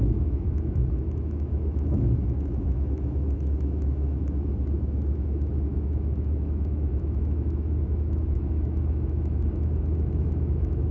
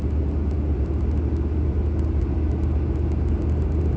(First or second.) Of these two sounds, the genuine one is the second